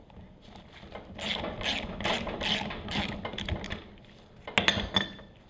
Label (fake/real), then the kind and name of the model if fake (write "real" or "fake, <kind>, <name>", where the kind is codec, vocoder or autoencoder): real